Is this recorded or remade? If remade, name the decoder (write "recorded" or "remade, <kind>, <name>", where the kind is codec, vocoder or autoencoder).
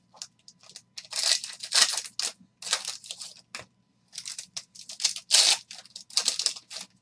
recorded